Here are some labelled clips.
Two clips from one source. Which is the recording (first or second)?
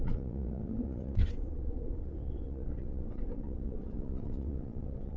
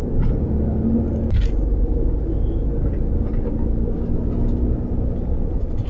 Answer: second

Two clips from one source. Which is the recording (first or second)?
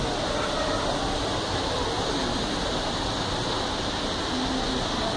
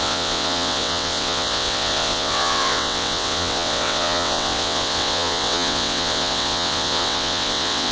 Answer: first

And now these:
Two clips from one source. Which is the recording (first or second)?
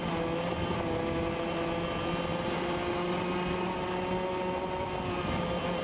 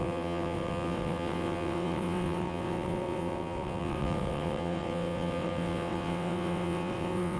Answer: first